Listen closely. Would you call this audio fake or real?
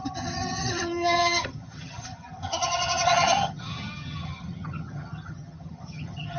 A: fake